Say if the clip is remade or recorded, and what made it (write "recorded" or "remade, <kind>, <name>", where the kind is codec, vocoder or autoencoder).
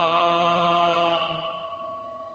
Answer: remade, vocoder, HiFi-GAN